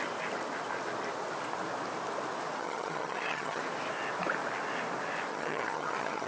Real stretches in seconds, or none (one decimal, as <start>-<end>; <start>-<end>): 0.0-2.6; 3.6-5.3

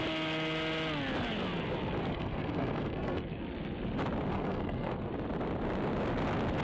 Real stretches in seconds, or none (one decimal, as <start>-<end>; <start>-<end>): 0.0-2.1; 3.4-4.3; 5.1-6.6

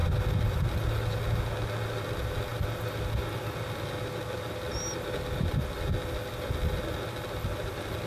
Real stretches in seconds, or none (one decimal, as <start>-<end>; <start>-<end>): 0.0-8.1

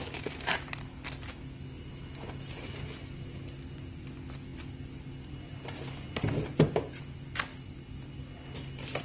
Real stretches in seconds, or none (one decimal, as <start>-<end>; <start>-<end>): 0.0-9.0

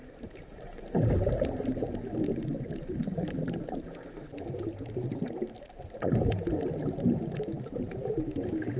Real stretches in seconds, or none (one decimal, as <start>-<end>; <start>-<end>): none

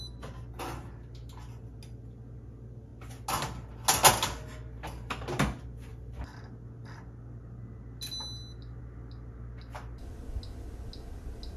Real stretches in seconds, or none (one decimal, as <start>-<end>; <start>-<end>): 0.0-11.6

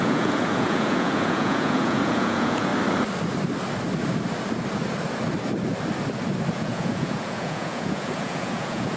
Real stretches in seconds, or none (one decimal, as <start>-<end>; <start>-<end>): 2.7-6.5

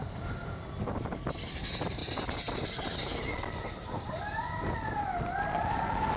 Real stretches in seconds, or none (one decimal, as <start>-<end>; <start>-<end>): 0.0-6.2